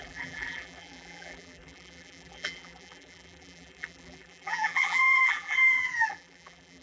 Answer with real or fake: fake